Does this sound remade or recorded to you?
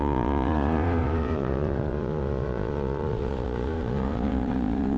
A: remade